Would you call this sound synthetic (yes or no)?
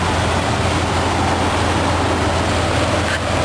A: no